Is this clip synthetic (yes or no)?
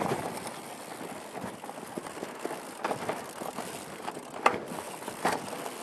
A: no